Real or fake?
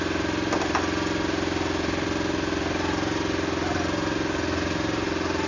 real